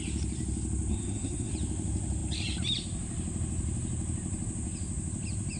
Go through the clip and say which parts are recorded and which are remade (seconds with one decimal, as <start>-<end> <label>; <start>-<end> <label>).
0.0-0.9 recorded; 0.9-1.5 remade; 1.5-5.6 recorded